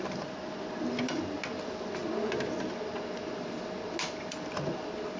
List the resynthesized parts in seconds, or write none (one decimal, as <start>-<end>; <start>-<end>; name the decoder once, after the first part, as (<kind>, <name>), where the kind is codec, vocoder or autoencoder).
none